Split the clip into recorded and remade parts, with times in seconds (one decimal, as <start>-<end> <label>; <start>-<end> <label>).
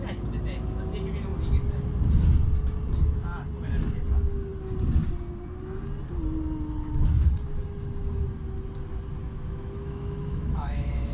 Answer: 0.0-9.2 recorded; 9.2-11.1 remade